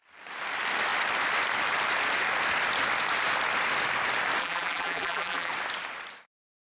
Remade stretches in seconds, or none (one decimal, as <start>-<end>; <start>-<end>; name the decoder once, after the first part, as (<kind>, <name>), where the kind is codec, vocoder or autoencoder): 4.4-5.5 (vocoder, BigVGAN v2)